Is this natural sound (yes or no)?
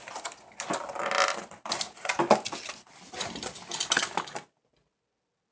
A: yes